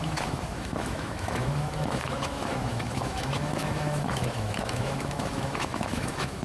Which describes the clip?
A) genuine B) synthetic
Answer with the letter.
B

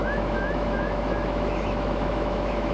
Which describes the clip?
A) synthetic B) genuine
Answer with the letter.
A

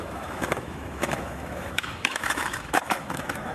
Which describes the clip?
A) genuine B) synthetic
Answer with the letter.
B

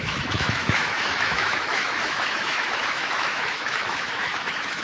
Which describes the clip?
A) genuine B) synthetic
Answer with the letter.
B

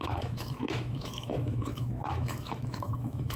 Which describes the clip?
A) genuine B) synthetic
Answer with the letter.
B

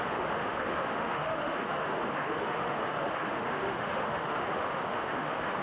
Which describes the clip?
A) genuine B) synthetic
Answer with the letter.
B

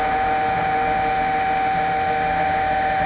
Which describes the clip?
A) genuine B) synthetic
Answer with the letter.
B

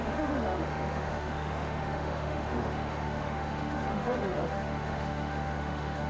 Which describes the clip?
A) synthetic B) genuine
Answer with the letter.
A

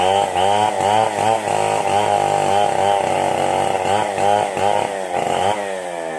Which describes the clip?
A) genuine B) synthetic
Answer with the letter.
A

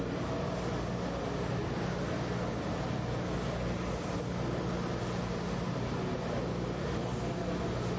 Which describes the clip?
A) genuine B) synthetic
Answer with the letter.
A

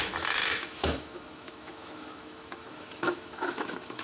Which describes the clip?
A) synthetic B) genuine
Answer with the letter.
A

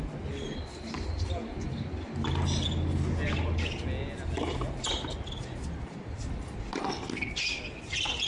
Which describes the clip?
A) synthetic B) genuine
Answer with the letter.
B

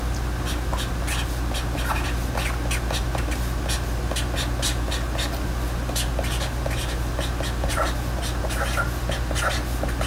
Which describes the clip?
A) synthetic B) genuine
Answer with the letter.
B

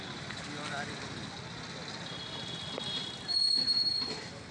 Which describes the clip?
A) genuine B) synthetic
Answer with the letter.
A